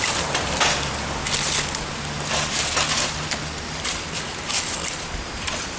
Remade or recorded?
recorded